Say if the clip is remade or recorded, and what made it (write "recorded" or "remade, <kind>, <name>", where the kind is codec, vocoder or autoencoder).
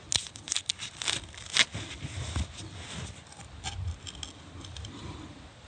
recorded